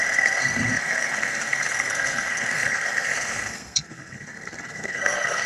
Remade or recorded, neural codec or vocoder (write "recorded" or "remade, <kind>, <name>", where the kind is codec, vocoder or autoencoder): remade, codec, SNAC